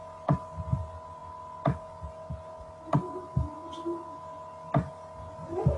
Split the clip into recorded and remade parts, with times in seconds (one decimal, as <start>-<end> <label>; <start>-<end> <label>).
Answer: 0.0-5.8 recorded